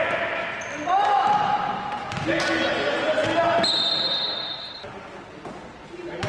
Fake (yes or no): no